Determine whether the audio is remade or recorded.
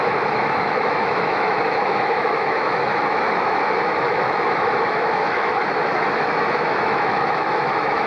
remade